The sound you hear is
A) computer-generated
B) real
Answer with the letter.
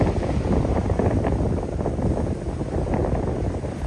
B